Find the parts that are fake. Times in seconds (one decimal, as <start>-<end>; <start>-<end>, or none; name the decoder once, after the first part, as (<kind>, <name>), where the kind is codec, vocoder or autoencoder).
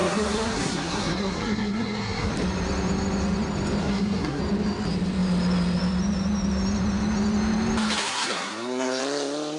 0.0-2.3 (codec, SNAC); 3.8-4.4; 8.0-9.0